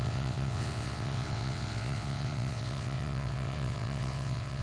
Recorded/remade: remade